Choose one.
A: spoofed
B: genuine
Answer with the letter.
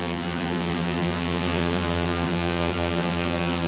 A